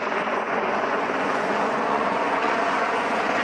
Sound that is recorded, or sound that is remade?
remade